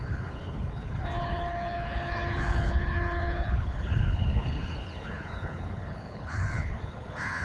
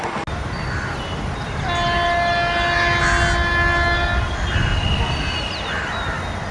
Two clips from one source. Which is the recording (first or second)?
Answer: second